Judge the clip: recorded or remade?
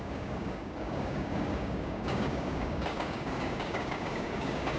remade